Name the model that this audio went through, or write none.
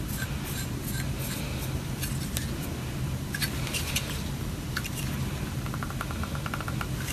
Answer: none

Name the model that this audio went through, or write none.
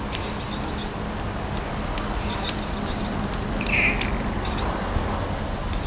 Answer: none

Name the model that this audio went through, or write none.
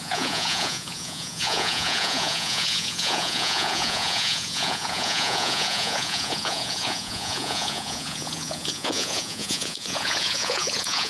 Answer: vocoder, Vocos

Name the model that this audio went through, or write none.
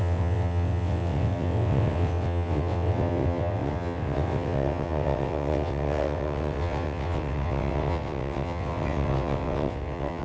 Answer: vocoder, WaveNeXt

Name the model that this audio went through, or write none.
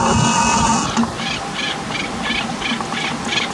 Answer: none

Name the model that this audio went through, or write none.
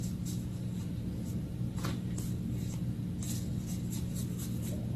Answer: none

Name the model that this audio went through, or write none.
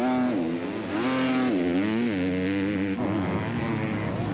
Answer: none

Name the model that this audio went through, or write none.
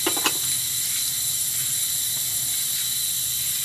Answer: none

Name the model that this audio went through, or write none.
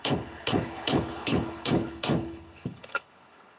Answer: codec, HILCodec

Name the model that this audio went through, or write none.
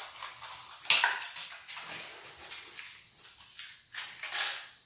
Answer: none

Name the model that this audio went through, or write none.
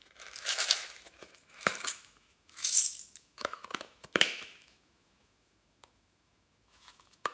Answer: autoencoder, DAC-VAE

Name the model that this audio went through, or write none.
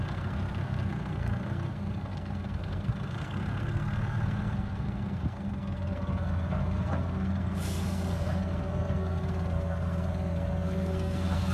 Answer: codec, SNAC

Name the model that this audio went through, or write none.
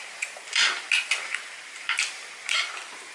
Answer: none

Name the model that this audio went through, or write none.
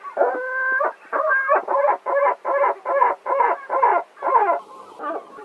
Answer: none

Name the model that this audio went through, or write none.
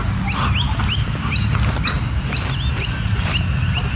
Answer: none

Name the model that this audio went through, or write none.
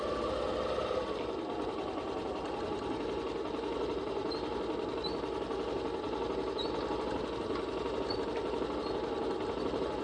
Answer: none